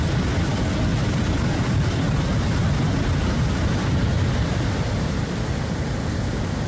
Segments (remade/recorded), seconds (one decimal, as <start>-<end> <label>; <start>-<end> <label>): 0.0-6.7 recorded